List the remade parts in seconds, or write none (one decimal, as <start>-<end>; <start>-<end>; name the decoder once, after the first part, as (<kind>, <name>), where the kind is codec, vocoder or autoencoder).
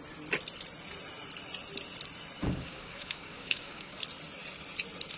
2.4-4.0 (codec, DAC)